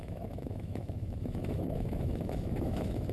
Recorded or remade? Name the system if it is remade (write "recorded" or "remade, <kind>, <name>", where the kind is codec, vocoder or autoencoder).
remade, autoencoder, DAC-VAE